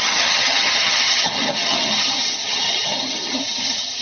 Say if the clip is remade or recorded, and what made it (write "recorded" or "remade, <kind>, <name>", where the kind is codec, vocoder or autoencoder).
remade, vocoder, HiFi-GAN